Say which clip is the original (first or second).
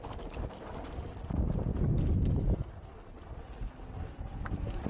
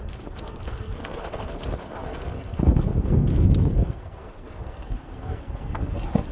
first